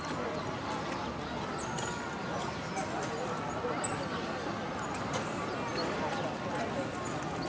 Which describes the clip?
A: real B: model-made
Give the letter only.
A